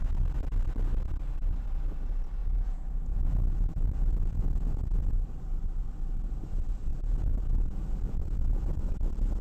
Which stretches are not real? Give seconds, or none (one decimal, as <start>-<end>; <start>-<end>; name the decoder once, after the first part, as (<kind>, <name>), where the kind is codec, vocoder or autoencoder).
2.4-5.1 (vocoder, Vocos); 6.9-8.9